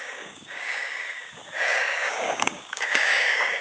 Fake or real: fake